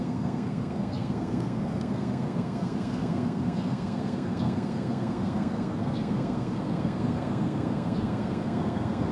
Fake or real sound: fake